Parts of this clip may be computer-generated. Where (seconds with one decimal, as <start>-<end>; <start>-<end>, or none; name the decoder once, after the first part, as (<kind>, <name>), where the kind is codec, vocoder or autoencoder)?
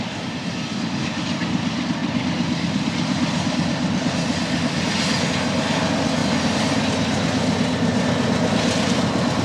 2.0-4.8 (vocoder, BigVGAN v2); 6.2-6.9